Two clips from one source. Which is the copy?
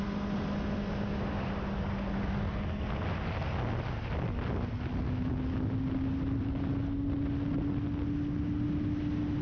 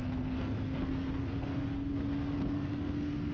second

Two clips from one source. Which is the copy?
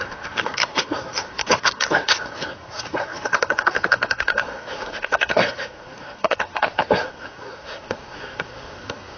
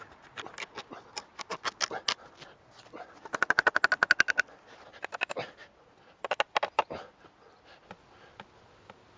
first